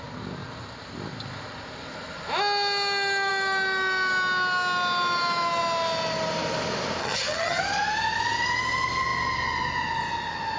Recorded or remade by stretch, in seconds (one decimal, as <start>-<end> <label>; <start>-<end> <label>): 0.0-7.0 recorded; 7.0-7.6 remade; 7.6-10.6 recorded